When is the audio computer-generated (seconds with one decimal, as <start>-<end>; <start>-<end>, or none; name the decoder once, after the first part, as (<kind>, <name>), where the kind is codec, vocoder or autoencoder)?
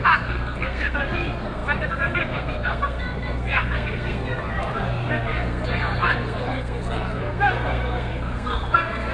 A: 0.0-9.1 (codec, SNAC)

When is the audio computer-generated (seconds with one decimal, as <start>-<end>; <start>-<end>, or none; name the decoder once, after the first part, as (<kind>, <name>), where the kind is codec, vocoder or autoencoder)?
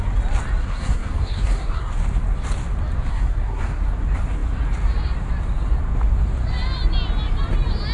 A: 0.6-1.9 (codec, SNAC); 3.1-3.8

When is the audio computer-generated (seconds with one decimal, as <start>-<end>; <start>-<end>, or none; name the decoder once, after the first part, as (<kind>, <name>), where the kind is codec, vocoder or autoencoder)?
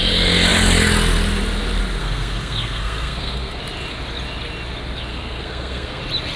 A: 2.0-3.6 (codec, SNAC); 5.1-6.0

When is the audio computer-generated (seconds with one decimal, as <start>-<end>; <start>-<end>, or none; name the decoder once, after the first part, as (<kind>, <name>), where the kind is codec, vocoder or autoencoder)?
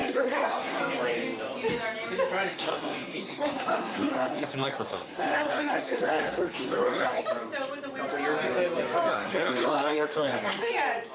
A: 0.0-0.8 (codec, SNAC); 2.5-7.2; 9.1-10.7